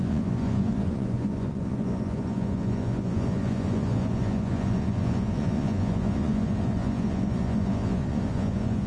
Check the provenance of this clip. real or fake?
fake